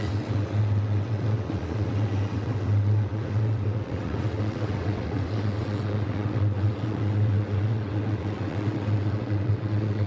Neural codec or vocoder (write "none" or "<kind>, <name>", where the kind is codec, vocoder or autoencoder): vocoder, WaveNeXt